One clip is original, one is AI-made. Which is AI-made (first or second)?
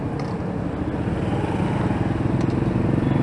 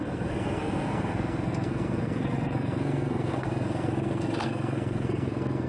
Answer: second